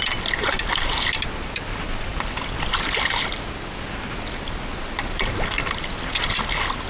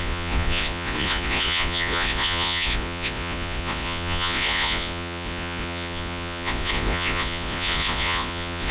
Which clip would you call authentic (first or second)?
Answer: first